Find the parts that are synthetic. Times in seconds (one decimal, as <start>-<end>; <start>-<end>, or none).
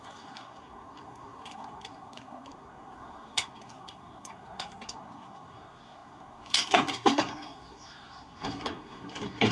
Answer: 0.0-9.5